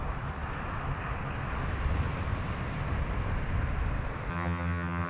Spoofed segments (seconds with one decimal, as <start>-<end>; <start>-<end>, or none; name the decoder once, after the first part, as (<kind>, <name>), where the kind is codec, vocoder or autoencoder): 4.3-5.1 (vocoder, HiFi-GAN)